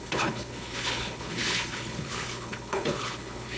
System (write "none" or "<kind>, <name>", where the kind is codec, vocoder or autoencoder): codec, HILCodec